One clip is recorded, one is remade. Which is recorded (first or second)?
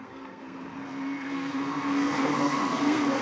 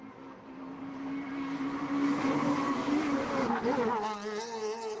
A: second